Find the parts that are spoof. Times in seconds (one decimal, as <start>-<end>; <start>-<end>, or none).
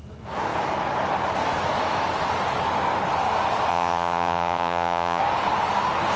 3.7-5.2